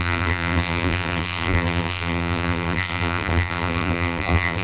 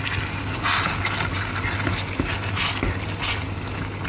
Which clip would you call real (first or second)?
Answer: second